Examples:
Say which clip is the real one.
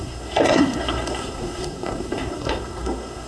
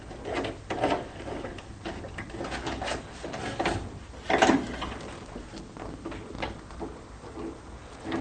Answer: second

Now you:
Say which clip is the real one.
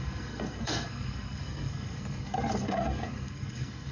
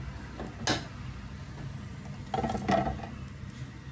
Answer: second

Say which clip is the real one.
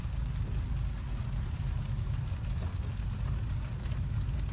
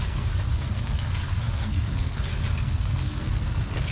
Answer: first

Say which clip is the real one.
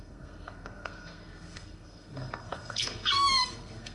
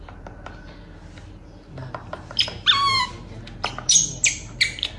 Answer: second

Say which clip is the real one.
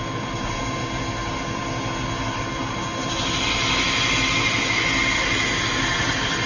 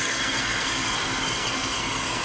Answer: first